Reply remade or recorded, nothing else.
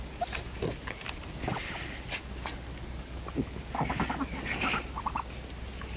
recorded